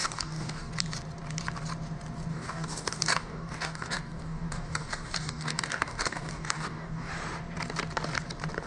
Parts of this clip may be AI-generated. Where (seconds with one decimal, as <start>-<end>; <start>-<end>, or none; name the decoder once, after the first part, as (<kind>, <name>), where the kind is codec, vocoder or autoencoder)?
0.0-0.7 (codec, DAC); 2.3-7.1